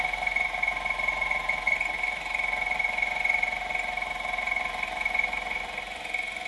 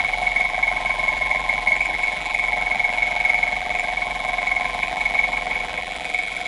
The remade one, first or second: second